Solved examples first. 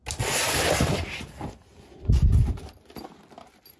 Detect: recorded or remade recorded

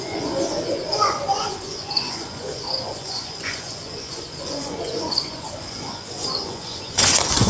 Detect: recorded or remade remade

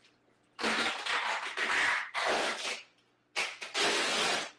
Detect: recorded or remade recorded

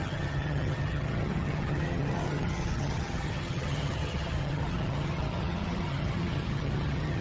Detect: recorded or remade remade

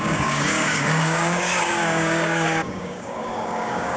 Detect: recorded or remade remade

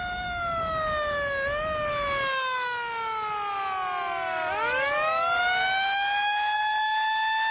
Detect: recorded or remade recorded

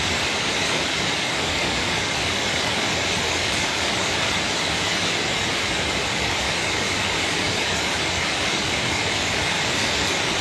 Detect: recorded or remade remade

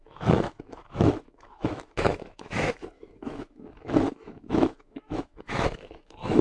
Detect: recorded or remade remade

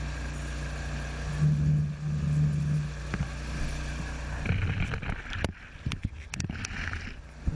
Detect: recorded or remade recorded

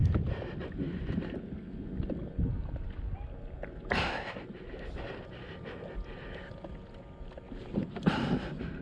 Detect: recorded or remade recorded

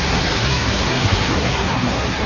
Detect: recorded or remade remade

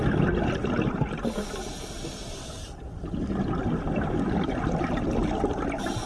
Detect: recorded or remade recorded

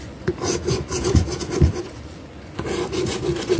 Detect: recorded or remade remade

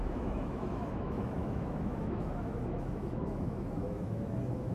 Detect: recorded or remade remade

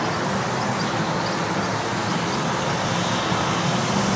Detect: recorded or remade recorded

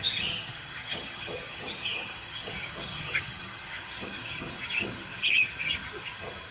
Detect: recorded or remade remade